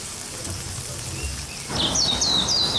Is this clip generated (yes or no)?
no